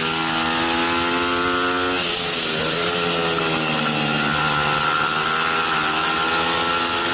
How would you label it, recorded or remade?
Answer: recorded